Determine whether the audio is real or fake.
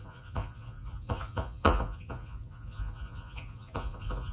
fake